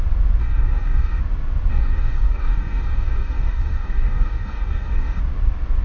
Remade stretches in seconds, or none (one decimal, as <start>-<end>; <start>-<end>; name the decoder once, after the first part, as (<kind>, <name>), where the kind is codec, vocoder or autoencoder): 0.4-1.2 (codec, DAC); 1.7-5.2